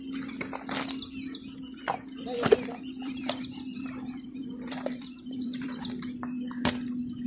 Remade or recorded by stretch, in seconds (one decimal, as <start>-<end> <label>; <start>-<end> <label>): 0.0-3.0 recorded; 3.0-5.8 remade; 5.8-7.3 recorded